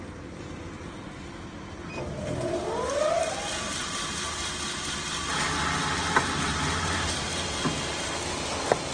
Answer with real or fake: real